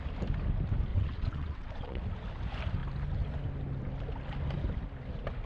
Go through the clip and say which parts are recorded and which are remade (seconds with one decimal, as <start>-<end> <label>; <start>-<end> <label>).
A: 0.0-0.9 recorded; 0.9-2.0 remade; 2.0-5.5 recorded